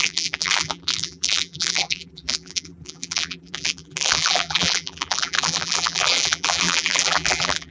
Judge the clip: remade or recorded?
remade